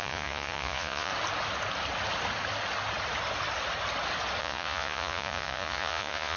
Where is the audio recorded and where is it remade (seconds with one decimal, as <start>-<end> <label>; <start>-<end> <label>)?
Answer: 0.0-1.1 remade; 1.1-4.4 recorded; 4.4-6.4 remade